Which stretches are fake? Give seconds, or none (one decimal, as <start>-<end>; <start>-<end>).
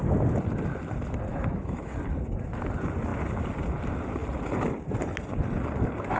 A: 1.3-1.9